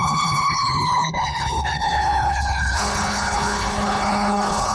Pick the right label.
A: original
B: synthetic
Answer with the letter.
B